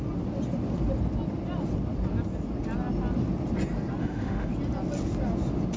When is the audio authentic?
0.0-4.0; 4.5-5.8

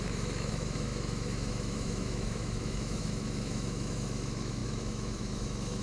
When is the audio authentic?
none

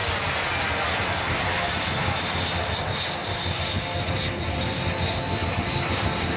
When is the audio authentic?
0.0-6.4

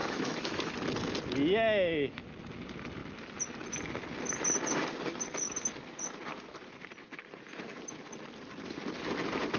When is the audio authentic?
0.7-9.6

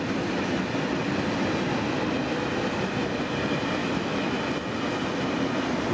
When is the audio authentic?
0.0-3.8; 4.3-5.9

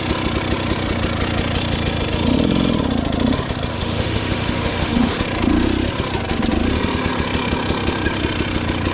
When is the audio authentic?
0.0-3.7; 5.1-8.9

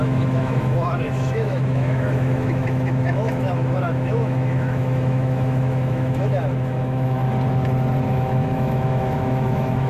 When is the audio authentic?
7.2-8.1

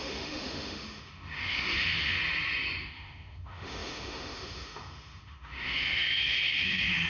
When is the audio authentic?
2.2-2.8